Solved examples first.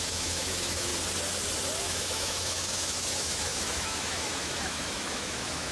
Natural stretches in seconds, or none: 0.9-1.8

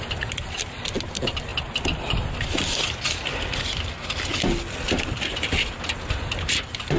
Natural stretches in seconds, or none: 0.0-7.0

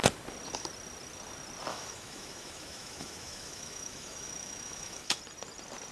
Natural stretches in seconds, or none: 0.0-1.7; 5.2-5.9